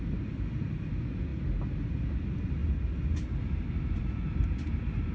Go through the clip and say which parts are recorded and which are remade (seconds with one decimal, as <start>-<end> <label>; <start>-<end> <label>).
0.0-5.1 recorded